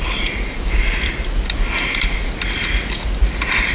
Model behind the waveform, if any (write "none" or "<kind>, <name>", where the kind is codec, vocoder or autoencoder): none